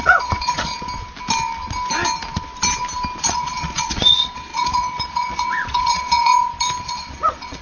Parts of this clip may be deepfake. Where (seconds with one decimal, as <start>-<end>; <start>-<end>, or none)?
0.0-0.7; 3.2-6.3; 6.8-7.6